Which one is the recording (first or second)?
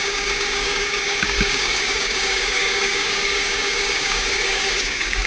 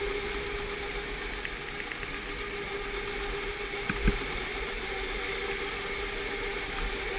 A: second